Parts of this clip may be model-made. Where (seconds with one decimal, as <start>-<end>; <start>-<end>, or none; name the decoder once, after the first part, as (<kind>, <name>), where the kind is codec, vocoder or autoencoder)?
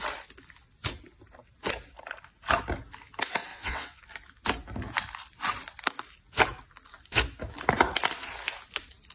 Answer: 3.5-4.0 (vocoder, WaveNeXt)